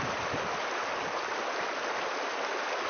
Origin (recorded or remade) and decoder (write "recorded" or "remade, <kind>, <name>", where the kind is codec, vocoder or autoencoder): recorded